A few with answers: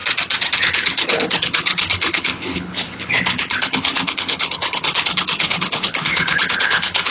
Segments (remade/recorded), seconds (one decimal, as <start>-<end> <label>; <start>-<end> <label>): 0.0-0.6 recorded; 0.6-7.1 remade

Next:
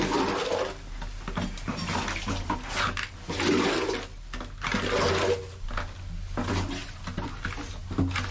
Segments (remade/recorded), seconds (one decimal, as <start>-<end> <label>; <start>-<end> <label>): 0.0-8.3 recorded

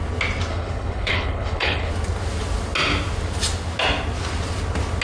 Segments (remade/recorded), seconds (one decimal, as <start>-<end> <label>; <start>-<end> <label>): 0.0-0.5 recorded; 0.5-1.9 remade; 1.9-5.0 recorded

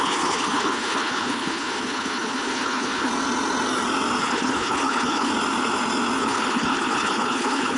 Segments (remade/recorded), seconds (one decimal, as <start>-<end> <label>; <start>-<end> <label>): 0.0-3.1 remade; 3.1-4.2 recorded; 4.2-5.3 remade; 5.3-6.2 recorded; 6.2-7.8 remade

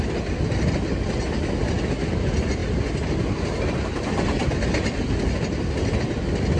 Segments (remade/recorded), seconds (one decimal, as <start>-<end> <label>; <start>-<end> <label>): 0.0-6.6 recorded

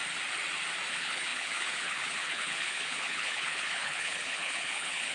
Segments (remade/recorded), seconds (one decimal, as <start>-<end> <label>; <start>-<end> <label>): 0.0-0.9 recorded; 0.9-5.1 remade

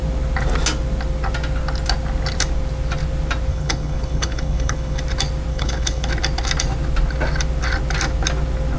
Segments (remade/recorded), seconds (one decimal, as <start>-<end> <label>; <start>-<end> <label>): 0.0-3.5 recorded; 3.5-5.0 remade; 5.0-5.5 recorded; 5.5-6.1 remade; 6.1-8.8 recorded